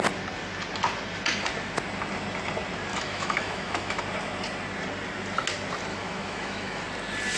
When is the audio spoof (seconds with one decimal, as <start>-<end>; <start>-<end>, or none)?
2.9-4.0; 5.9-6.8